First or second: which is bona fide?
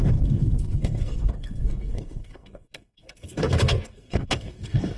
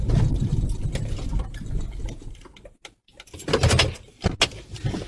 second